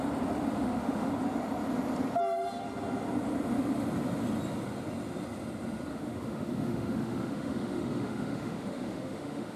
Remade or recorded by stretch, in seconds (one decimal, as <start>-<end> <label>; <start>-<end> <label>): 0.0-0.5 recorded; 0.5-1.1 remade; 1.1-5.9 recorded; 5.9-9.6 remade